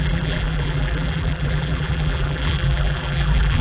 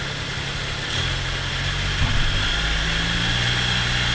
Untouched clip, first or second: second